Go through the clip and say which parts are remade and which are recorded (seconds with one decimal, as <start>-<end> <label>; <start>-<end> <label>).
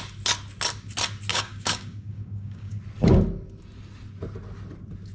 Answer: 0.0-1.3 recorded; 1.3-2.8 remade; 2.8-5.1 recorded